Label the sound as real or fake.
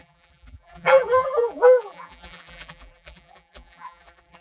fake